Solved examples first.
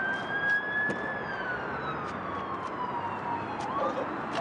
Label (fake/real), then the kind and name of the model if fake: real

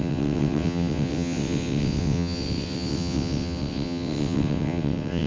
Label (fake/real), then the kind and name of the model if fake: fake, vocoder, WaveNeXt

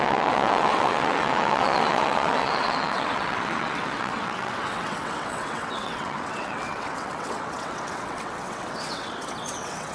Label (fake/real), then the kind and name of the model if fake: fake, vocoder, WaveNeXt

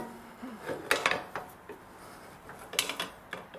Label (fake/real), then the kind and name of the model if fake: real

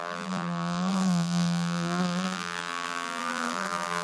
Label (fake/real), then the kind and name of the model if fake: fake, vocoder, BigVGAN v2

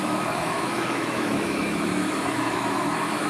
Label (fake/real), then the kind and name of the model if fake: fake, autoencoder, DAC-VAE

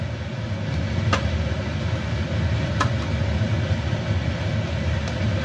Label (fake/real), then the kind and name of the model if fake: real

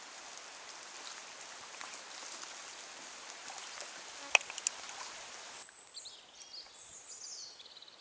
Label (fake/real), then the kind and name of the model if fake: real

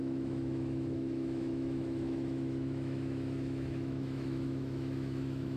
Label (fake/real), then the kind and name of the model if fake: fake, autoencoder, DAC-VAE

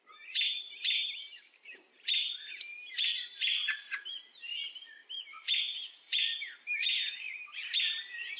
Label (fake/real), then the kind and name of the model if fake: fake, vocoder, BigVGAN v2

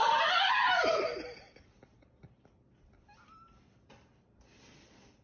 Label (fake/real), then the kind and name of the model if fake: fake, vocoder, BigVGAN v2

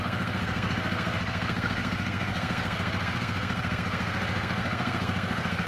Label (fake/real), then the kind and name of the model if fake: fake, codec, SNAC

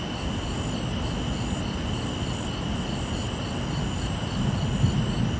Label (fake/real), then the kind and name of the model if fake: real